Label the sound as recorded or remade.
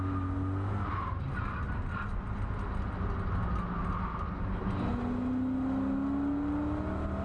recorded